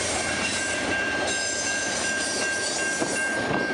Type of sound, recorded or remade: remade